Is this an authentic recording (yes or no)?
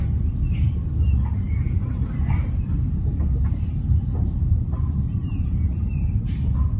no